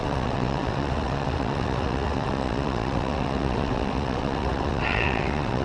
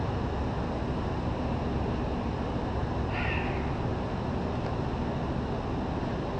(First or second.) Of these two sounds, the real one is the second